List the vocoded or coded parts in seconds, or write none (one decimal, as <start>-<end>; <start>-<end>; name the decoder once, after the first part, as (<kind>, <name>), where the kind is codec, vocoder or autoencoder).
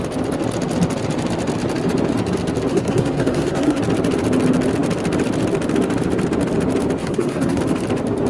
2.7-3.8 (codec, SNAC); 7.0-7.6